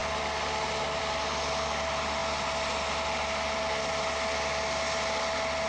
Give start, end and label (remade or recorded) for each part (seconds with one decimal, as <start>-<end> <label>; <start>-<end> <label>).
0.0-5.7 recorded